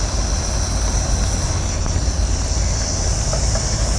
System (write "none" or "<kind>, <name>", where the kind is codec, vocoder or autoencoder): none